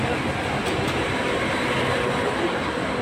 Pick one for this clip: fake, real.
real